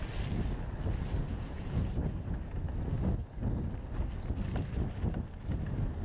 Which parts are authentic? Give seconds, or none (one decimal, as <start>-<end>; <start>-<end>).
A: 0.0-1.3; 1.9-6.0